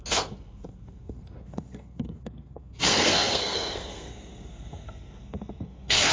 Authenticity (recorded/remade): remade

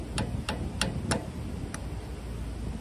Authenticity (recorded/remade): recorded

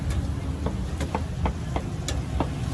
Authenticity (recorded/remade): recorded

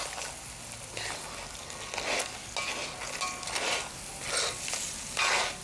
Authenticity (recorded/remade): recorded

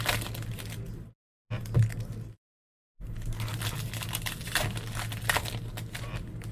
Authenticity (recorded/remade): recorded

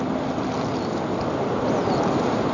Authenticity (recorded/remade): recorded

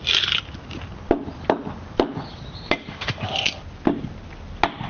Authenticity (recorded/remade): recorded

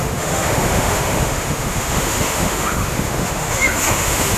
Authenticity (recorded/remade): remade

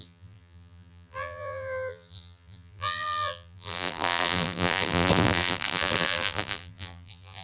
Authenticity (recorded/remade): remade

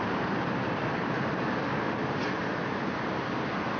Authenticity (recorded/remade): recorded